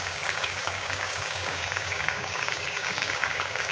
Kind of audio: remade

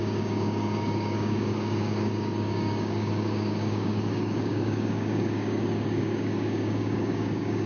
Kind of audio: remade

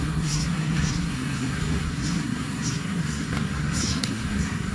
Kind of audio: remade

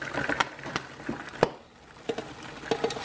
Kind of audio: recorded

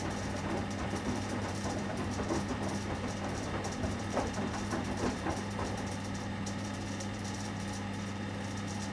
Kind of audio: remade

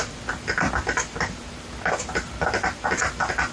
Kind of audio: recorded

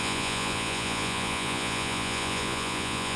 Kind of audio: remade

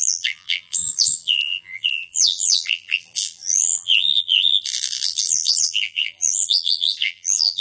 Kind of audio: remade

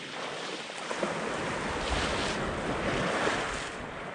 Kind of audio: recorded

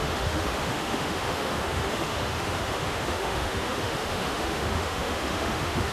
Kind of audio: remade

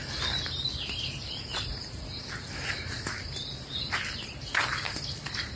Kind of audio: recorded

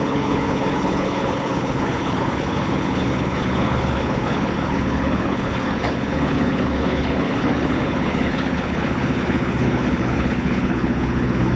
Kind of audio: remade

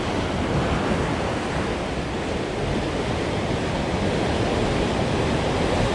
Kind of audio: recorded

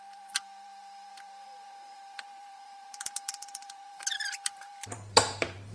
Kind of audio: remade